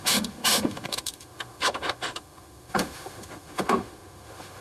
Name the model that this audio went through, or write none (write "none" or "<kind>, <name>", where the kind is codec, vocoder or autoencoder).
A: autoencoder, DAC-VAE